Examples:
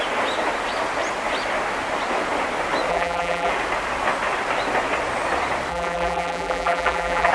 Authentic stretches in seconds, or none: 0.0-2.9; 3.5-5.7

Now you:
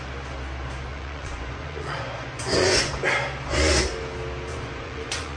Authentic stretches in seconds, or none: 0.0-0.9; 2.9-4.5

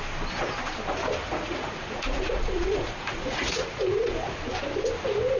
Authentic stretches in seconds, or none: 0.0-1.2; 4.4-5.4